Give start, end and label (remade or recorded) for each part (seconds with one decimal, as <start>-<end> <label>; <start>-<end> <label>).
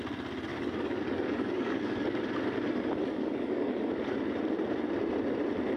0.0-0.5 recorded; 0.5-2.2 remade; 2.2-3.0 recorded; 3.0-3.9 remade; 3.9-5.8 recorded